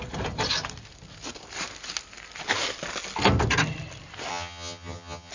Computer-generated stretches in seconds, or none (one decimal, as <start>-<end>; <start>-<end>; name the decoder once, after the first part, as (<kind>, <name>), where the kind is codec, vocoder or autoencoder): 4.3-5.3 (vocoder, HiFi-GAN)